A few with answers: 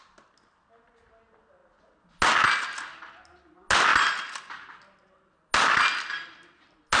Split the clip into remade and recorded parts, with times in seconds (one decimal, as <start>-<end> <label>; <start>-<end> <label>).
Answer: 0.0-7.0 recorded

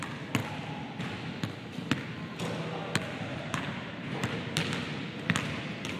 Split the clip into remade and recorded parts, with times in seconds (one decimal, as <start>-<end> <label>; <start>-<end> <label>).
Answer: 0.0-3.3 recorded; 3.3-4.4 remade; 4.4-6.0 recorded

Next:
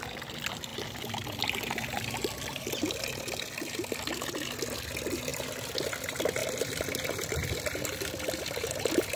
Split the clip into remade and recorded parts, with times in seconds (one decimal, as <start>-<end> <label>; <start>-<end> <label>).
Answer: 0.0-0.7 recorded; 0.7-3.2 remade; 3.2-6.4 recorded; 6.4-8.4 remade; 8.4-9.2 recorded

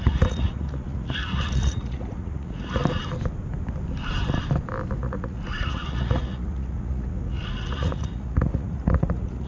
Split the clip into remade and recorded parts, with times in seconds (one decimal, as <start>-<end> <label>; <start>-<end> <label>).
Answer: 0.0-2.8 remade; 2.8-5.0 recorded; 5.0-9.5 remade